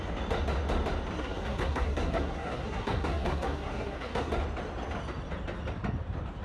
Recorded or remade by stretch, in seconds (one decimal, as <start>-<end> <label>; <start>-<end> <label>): 0.0-1.2 recorded; 1.2-4.3 remade; 4.3-6.4 recorded